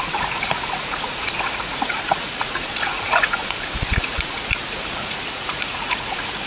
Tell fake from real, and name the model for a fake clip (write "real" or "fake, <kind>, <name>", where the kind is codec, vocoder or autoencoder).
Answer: fake, vocoder, Vocos